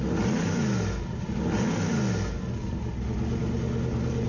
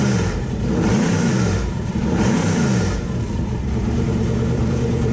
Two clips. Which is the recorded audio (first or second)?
first